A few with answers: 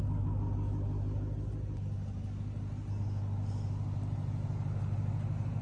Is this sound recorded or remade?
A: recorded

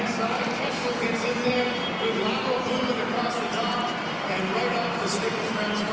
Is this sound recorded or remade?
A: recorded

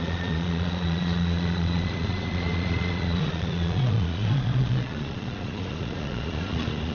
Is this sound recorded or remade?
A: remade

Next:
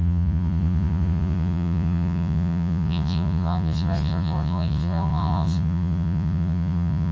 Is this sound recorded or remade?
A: remade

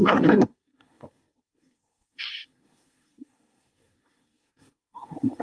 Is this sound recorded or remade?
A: remade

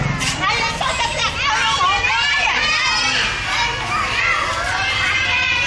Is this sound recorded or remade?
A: recorded